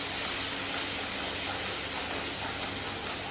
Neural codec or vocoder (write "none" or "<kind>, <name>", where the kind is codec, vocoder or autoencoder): none